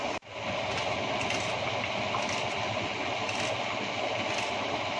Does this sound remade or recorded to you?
recorded